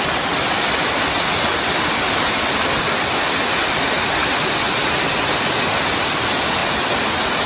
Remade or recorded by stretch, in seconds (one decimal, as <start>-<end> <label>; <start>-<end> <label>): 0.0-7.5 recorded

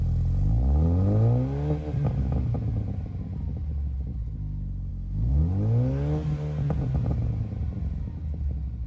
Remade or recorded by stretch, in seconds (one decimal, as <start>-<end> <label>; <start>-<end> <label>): 0.0-4.9 recorded; 4.9-5.4 remade; 5.4-8.9 recorded

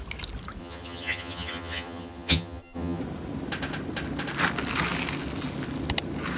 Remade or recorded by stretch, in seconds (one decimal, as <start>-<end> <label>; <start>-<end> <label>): 0.0-0.6 recorded; 0.6-3.0 remade; 3.0-6.4 recorded

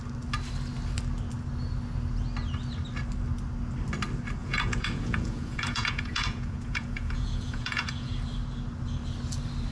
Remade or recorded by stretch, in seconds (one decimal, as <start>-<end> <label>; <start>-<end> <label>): 0.0-4.4 recorded; 4.4-8.1 remade; 8.1-9.7 recorded

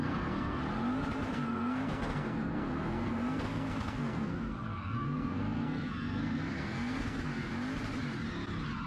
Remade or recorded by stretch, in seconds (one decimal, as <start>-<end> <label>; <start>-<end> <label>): 0.0-0.6 remade; 0.6-1.3 recorded; 1.3-7.5 remade; 7.5-8.9 recorded